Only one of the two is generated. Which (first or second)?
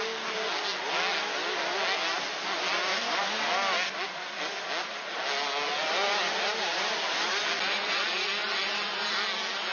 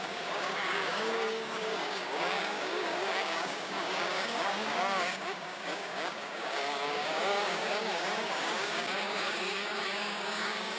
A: second